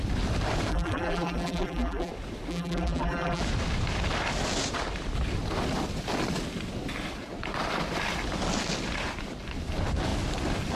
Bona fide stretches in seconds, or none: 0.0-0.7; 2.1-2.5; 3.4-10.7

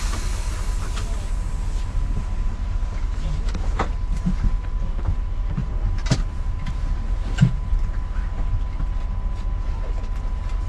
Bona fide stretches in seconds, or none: 0.0-5.6; 7.3-10.7

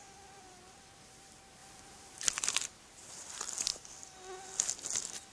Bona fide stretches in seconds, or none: 3.7-5.3

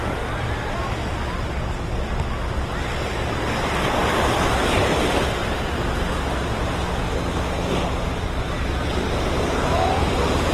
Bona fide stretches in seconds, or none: 0.9-4.0; 4.6-5.4; 6.2-10.5

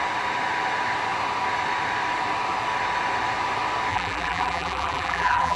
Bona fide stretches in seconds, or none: 0.0-3.9

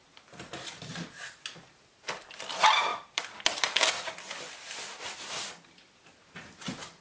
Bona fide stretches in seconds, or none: 0.0-2.9; 5.7-7.0

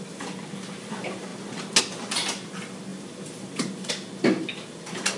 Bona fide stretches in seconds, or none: 0.0-2.9; 3.9-5.2

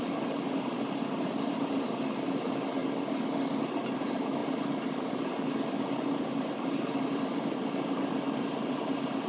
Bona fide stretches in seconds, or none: 2.8-3.6